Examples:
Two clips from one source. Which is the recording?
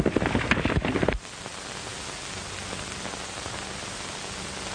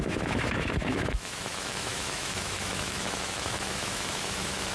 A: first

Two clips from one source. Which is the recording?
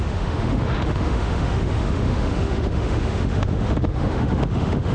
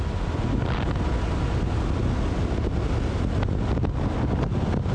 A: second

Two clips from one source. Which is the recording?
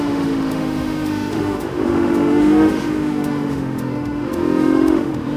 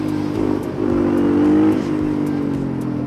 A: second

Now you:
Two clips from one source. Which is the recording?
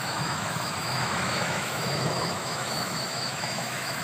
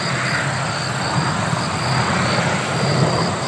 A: second